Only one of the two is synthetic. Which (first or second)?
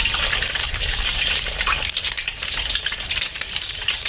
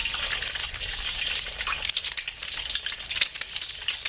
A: first